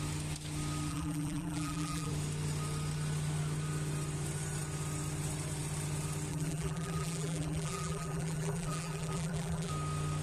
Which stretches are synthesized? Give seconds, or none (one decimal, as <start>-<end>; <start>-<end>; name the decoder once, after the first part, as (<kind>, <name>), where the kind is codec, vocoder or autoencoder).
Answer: 0.9-2.1 (vocoder, BigVGAN v2); 6.3-9.7